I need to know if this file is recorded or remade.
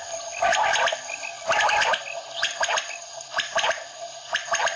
recorded